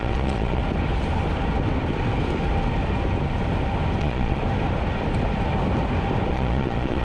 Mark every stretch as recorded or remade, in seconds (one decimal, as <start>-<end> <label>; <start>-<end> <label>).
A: 0.0-0.6 remade; 0.6-4.0 recorded; 4.0-4.4 remade; 4.4-6.3 recorded; 6.3-7.0 remade